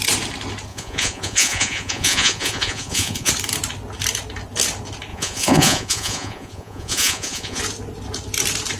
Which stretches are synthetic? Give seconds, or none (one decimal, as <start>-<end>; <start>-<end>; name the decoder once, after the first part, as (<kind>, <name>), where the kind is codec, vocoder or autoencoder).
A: 0.7-3.3 (vocoder, Vocos); 5.1-7.6